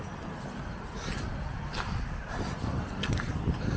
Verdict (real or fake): real